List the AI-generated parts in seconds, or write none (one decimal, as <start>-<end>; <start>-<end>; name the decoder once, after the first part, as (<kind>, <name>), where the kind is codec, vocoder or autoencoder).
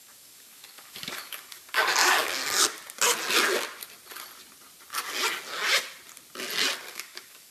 0.0-2.4 (codec, DAC); 6.9-7.5